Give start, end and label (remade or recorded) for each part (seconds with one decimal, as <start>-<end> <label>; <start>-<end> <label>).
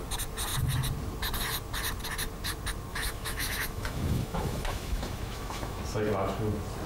0.0-2.9 recorded; 2.9-5.8 remade; 5.8-6.9 recorded